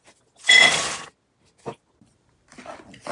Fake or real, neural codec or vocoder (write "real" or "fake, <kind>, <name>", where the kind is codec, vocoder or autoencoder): real